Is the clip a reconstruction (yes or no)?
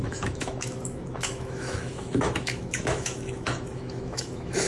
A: yes